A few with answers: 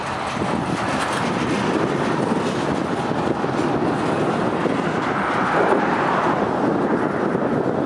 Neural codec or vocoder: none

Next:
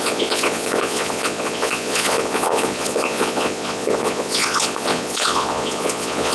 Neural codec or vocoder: vocoder, Vocos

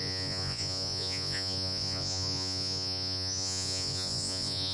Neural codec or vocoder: vocoder, Vocos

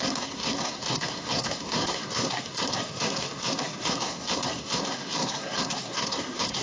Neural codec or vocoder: codec, SNAC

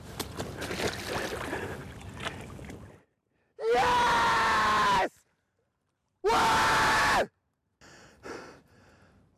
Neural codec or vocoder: none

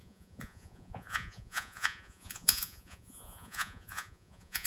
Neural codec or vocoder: vocoder, Vocos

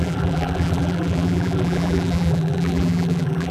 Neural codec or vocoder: vocoder, BigVGAN v2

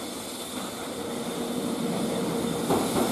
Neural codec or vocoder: none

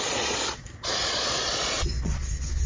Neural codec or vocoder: vocoder, Vocos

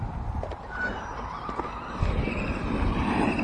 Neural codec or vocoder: none